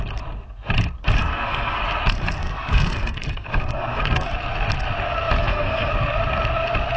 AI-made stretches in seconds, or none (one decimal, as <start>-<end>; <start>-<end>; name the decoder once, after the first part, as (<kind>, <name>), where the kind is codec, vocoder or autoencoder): 1.2-1.8 (codec, SNAC); 2.4-4.3; 5.4-5.9